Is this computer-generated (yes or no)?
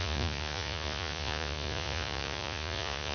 yes